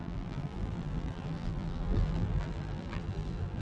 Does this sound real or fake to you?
fake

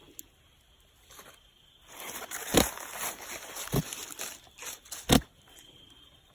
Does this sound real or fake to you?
real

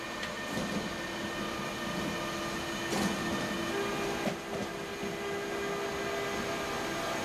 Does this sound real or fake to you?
real